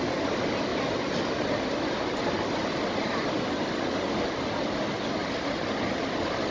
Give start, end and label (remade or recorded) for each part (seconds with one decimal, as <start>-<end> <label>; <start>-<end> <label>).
0.0-6.5 recorded